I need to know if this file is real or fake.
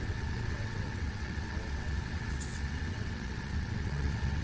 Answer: fake